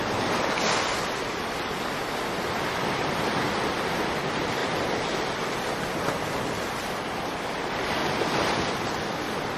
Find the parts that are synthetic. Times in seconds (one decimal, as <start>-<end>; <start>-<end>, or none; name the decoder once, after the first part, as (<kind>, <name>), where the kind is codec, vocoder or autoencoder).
8.0-8.7 (vocoder, BigVGAN v2)